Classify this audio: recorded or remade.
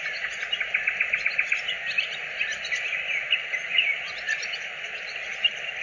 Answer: recorded